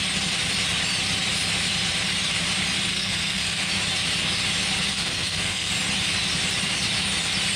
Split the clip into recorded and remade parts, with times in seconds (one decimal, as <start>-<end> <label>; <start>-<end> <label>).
0.0-2.9 recorded; 2.9-3.7 remade; 3.7-4.9 recorded; 4.9-5.7 remade; 5.7-7.6 recorded

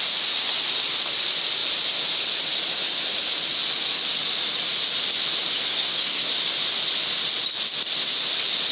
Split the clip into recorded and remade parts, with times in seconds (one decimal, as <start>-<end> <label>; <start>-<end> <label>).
0.0-5.5 recorded; 5.5-6.3 remade; 6.3-8.7 recorded

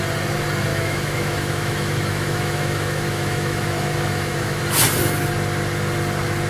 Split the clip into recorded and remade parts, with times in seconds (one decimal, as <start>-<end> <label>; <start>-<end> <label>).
0.0-0.7 recorded; 0.7-4.6 remade; 4.6-6.5 recorded

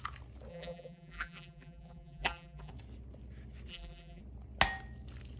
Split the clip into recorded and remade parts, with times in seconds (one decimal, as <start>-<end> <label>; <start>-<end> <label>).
0.0-0.5 recorded; 0.5-2.7 remade; 2.7-3.7 recorded; 3.7-4.2 remade; 4.2-5.4 recorded